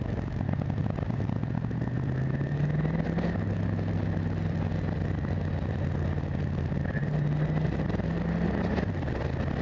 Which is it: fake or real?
real